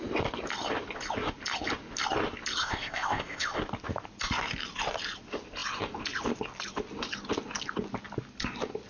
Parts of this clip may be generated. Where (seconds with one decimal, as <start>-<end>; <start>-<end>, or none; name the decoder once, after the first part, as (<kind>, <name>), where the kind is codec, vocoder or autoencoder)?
2.6-3.6 (codec, ZipCodec)